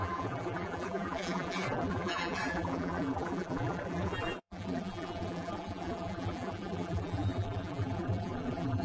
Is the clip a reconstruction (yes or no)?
yes